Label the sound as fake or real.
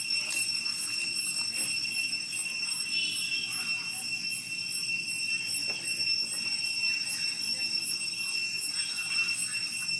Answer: real